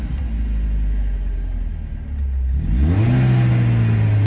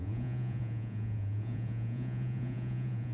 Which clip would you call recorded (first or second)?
first